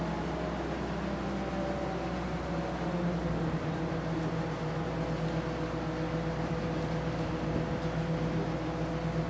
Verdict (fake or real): real